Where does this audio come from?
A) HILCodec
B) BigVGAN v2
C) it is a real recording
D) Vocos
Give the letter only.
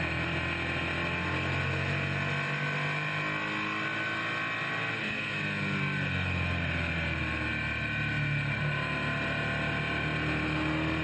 C